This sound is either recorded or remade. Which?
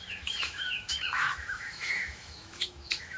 remade